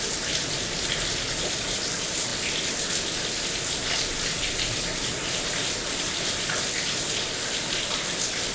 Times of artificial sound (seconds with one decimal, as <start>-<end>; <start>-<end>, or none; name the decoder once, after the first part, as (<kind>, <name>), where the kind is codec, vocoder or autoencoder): none